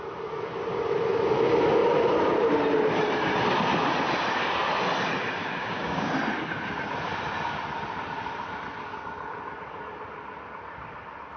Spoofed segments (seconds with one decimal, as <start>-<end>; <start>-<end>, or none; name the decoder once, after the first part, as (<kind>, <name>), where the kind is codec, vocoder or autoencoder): 5.4-6.1 (codec, DAC)